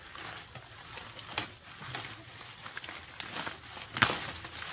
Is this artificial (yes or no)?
no